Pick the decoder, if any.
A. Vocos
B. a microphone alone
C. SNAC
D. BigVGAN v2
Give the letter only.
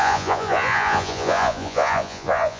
A